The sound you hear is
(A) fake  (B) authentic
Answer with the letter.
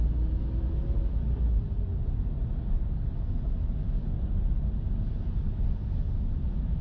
B